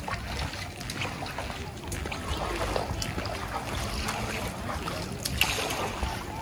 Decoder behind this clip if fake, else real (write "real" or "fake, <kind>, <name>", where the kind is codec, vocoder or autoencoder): real